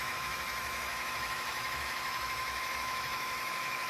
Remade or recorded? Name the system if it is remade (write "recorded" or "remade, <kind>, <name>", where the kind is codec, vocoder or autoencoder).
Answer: remade, autoencoder, DAC-VAE